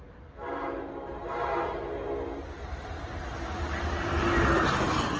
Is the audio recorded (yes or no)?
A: yes